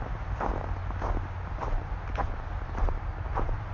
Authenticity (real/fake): real